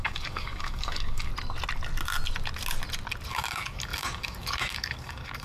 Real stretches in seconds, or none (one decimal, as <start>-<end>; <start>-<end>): 1.3-3.3